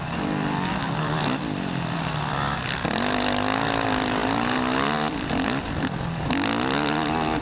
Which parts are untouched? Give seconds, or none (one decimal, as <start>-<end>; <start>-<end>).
0.0-7.4